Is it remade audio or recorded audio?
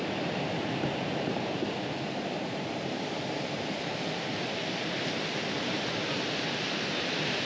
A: recorded